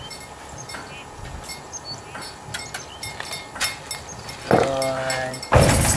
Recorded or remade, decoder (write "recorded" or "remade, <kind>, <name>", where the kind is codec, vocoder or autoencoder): recorded